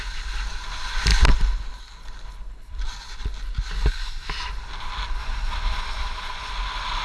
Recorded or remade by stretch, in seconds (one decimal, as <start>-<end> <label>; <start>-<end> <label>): 0.0-5.2 recorded; 5.2-6.5 remade; 6.5-7.0 recorded